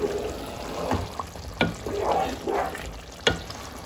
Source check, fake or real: real